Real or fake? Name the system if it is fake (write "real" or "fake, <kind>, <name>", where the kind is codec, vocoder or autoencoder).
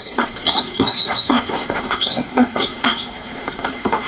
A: fake, codec, SNAC